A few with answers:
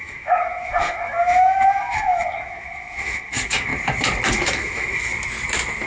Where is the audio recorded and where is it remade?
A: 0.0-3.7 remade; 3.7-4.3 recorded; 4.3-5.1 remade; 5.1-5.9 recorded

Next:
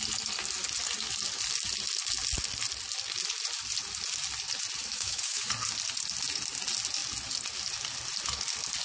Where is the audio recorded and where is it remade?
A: 0.0-4.8 recorded; 4.8-5.5 remade; 5.5-8.8 recorded

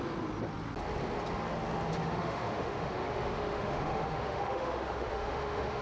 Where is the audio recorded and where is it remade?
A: 0.0-1.9 recorded; 1.9-5.8 remade

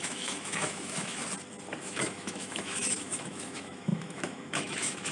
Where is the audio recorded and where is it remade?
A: 0.0-1.2 remade; 1.2-1.8 recorded; 1.8-5.1 remade

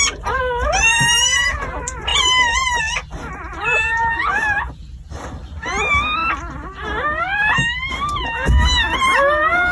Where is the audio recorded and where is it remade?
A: 0.0-9.7 recorded

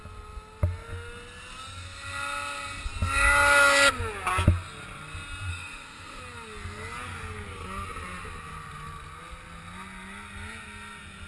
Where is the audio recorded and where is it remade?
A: 0.0-5.5 recorded; 5.5-6.2 remade; 6.2-11.3 recorded

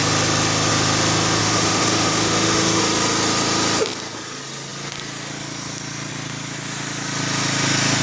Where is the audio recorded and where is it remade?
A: 0.0-1.4 recorded; 1.4-2.8 remade; 2.8-8.0 recorded